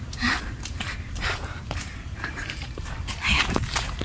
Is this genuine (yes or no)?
no